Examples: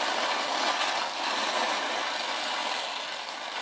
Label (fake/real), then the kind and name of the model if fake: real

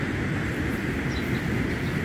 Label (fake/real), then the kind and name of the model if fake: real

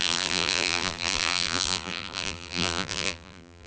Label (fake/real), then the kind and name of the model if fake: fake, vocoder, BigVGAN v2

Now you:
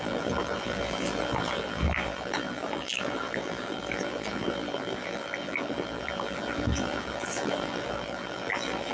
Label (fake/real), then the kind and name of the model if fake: fake, vocoder, BigVGAN v2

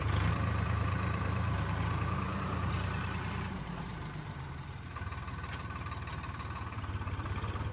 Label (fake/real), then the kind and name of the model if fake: fake, vocoder, BigVGAN v2